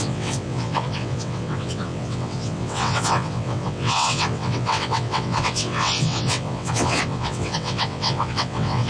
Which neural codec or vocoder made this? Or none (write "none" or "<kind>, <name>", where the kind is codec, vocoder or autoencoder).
vocoder, WaveNeXt